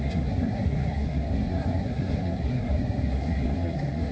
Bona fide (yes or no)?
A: no